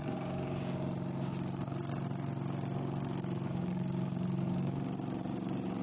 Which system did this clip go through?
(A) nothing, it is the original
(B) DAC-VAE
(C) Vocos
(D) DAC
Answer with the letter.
D